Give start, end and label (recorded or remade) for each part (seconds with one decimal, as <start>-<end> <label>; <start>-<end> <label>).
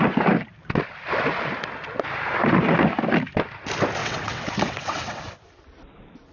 0.0-4.0 recorded; 4.0-5.2 remade; 5.2-6.3 recorded